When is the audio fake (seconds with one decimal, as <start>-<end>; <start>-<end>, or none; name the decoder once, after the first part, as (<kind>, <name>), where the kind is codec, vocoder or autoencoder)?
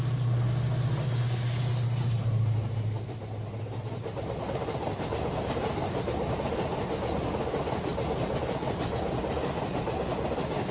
none